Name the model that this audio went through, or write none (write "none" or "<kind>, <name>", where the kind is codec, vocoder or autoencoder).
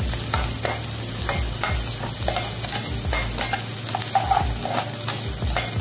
none